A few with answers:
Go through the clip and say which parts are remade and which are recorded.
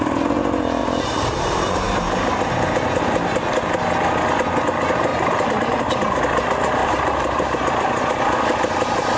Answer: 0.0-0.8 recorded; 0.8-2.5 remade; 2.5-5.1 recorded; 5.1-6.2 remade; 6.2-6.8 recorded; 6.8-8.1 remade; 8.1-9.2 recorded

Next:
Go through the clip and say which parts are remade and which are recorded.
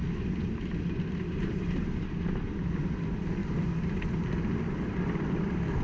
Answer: 0.0-5.8 recorded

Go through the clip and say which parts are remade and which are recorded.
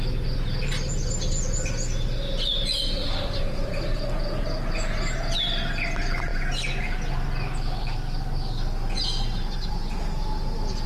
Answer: 0.0-3.0 recorded; 3.0-4.0 remade; 4.0-10.9 recorded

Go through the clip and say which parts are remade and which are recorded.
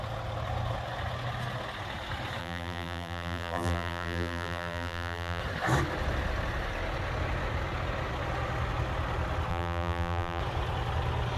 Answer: 0.0-2.4 recorded; 2.4-5.4 remade; 5.4-9.5 recorded; 9.5-10.4 remade; 10.4-11.4 recorded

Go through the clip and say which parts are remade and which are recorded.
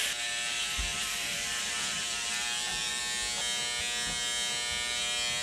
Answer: 0.0-0.9 recorded; 0.9-3.0 remade; 3.0-5.4 recorded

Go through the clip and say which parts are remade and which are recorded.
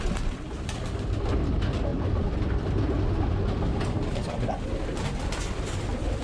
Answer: 0.0-1.9 recorded; 1.9-2.7 remade; 2.7-6.2 recorded